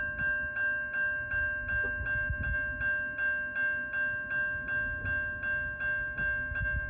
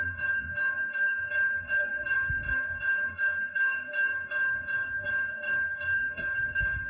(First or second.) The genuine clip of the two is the first